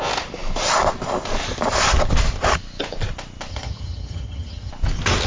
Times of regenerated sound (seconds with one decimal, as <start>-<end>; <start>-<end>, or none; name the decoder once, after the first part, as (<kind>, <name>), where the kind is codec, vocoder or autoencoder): 3.5-4.7 (vocoder, HiFi-GAN)